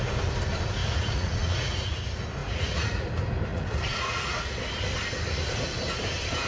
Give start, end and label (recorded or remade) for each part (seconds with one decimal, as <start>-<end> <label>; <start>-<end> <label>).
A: 0.0-0.8 recorded; 0.8-2.0 remade; 2.0-2.4 recorded; 2.4-3.1 remade; 3.1-3.5 recorded; 3.5-4.5 remade; 4.5-6.5 recorded